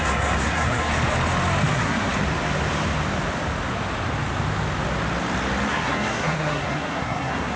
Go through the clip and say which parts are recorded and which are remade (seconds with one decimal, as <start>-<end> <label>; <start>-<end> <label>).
0.0-0.9 remade; 0.9-1.7 recorded; 1.7-2.1 remade; 2.1-5.7 recorded; 5.7-7.6 remade